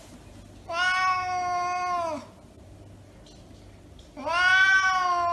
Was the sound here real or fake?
real